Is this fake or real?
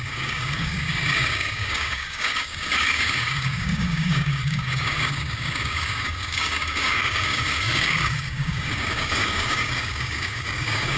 fake